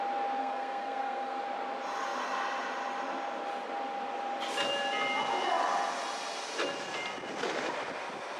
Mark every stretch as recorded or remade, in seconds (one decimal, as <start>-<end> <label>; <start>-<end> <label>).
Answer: 0.0-0.4 recorded; 0.4-1.4 remade; 1.4-8.4 recorded